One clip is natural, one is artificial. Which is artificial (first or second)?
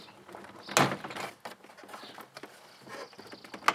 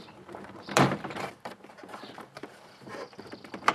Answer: second